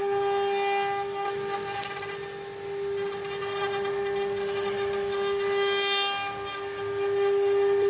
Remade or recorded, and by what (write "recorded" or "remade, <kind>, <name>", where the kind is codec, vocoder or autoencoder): recorded